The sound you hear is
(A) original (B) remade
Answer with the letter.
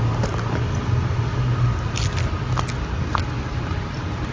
A